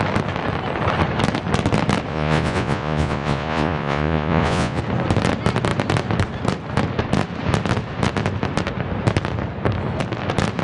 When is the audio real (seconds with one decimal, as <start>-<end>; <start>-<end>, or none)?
0.0-2.1; 4.8-10.6

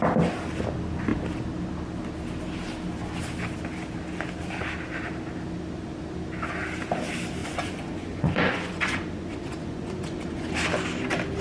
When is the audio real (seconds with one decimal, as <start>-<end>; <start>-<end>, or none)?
0.0-7.4; 10.5-11.4

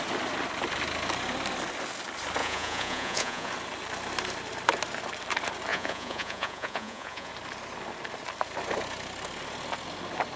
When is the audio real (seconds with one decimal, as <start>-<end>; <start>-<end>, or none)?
0.0-2.4; 3.5-5.7; 7.3-10.4

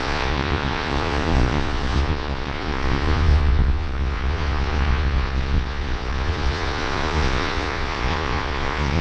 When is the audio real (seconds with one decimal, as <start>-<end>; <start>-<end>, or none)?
none

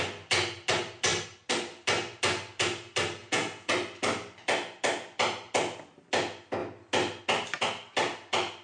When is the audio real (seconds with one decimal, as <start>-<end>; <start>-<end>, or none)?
0.0-3.2; 3.7-8.6